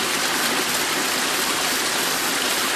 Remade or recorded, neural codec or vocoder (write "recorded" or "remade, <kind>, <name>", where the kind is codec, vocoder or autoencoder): recorded